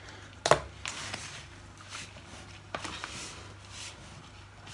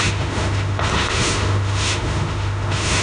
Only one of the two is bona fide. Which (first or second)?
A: first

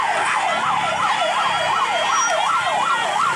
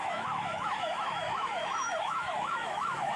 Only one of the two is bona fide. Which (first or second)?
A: first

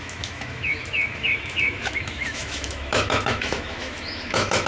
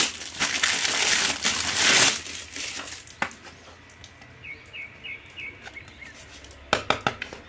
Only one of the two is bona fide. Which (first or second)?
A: second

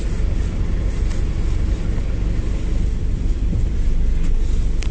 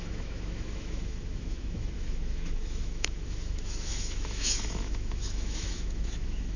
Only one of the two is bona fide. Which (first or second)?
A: first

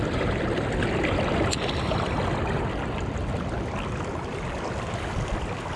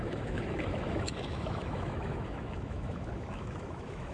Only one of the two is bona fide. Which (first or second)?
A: first